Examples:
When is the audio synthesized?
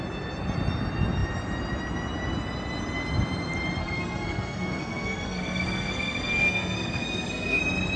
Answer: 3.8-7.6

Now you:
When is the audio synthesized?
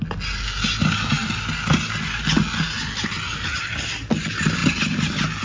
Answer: none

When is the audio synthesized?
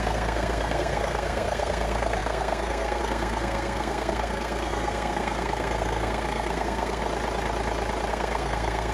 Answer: 0.0-7.0; 8.1-8.9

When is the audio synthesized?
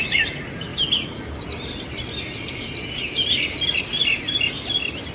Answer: none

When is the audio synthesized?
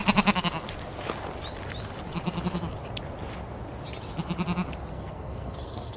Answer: 4.9-6.0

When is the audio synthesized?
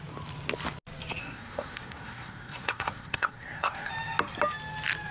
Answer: 1.2-3.9